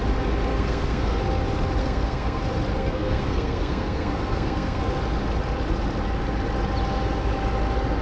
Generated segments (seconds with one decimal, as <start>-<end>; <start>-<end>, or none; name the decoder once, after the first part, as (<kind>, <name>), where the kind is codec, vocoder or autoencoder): 0.5-1.2 (codec, SNAC); 1.8-2.4; 2.8-4.8